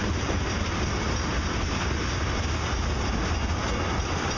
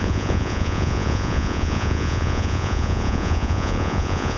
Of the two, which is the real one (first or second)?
first